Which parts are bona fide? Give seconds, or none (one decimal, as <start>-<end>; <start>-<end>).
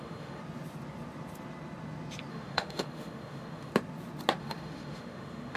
0.4-2.3; 3.7-4.4